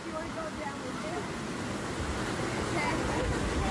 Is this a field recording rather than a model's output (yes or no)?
yes